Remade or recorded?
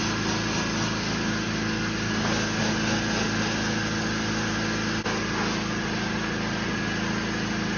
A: recorded